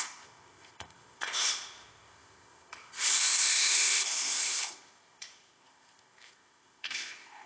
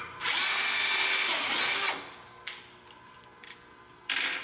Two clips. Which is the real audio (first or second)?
second